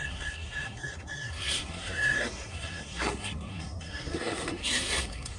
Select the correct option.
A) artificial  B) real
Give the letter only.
A